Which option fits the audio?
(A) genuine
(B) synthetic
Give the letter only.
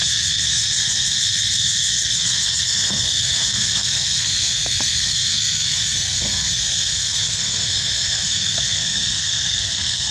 B